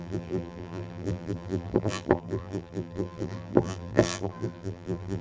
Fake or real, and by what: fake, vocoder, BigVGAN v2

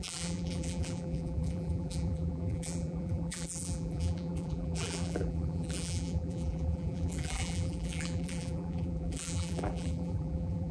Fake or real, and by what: fake, vocoder, BigVGAN v2